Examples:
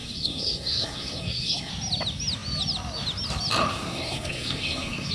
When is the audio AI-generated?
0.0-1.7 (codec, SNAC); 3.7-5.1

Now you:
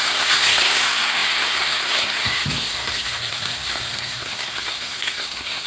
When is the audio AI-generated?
0.0-5.7 (codec, SNAC)

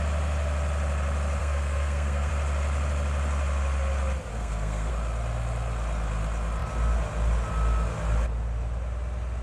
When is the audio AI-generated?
1.4-2.3 (codec, SNAC); 4.3-4.9

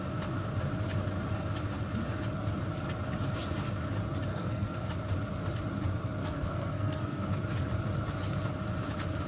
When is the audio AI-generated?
4.3-4.9 (codec, SNAC); 6.2-7.2

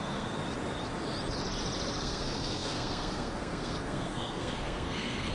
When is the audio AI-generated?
0.0-0.4 (codec, SNAC); 2.0-5.3